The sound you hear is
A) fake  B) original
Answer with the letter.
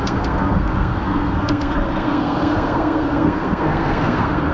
A